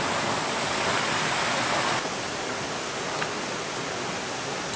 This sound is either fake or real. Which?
real